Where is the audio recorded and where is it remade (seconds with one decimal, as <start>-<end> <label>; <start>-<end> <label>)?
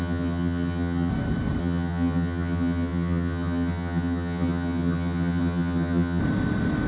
0.0-1.1 remade; 1.1-1.6 recorded; 1.6-6.2 remade; 6.2-6.9 recorded